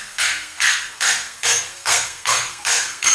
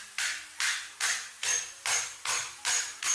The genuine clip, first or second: second